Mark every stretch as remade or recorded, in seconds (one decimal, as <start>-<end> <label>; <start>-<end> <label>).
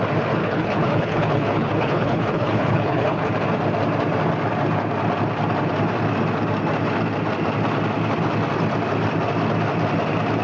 0.0-0.4 recorded; 0.4-3.3 remade; 3.3-10.4 recorded